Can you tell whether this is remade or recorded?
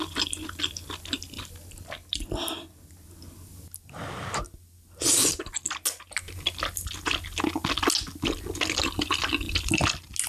recorded